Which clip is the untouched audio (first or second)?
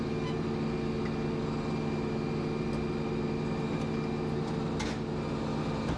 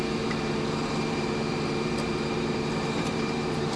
first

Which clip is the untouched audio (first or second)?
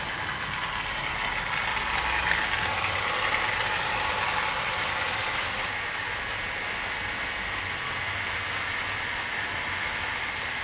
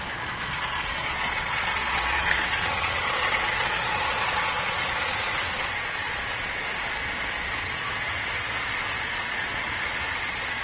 first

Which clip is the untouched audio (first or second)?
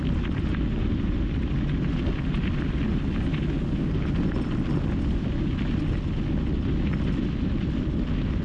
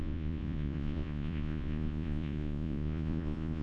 first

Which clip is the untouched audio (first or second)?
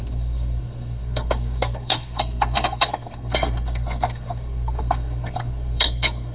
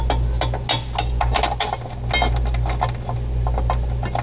second